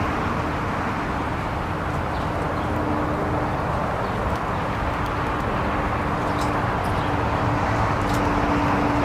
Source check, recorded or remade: recorded